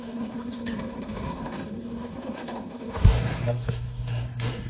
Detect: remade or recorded remade